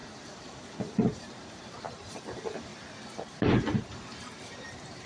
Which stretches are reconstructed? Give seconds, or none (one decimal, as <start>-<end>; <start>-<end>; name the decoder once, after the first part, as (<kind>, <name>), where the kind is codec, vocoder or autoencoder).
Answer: 0.0-2.7 (vocoder, BigVGAN v2); 3.8-5.1